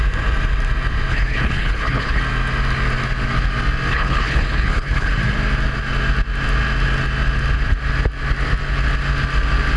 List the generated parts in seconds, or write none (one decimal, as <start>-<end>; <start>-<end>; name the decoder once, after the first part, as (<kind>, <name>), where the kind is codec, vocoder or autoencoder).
1.1-2.2 (codec, HILCodec); 3.9-5.1